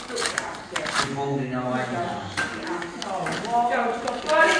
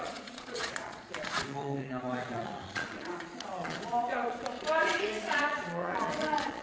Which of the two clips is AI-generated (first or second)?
second